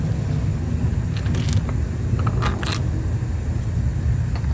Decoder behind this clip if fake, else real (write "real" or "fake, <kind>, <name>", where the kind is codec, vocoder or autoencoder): real